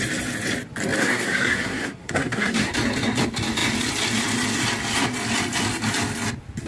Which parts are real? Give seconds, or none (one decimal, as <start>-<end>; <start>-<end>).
0.0-1.0; 2.7-6.7